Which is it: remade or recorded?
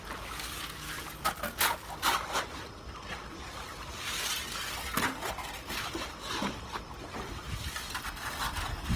recorded